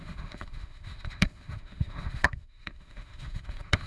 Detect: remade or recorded remade